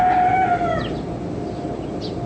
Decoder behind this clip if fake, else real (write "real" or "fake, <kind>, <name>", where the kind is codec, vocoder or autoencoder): real